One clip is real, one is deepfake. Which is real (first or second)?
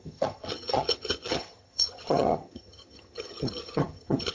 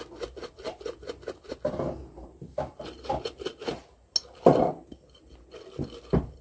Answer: second